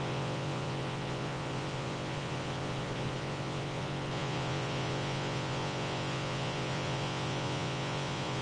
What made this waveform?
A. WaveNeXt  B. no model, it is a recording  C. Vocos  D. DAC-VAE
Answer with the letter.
C